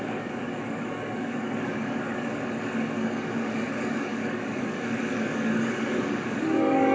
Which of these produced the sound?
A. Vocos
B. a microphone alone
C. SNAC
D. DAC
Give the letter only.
D